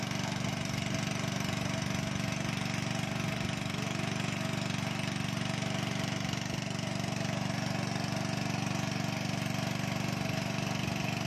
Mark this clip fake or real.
real